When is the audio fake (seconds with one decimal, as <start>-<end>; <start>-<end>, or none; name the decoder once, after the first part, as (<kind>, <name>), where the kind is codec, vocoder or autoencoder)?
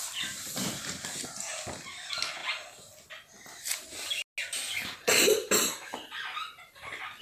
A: none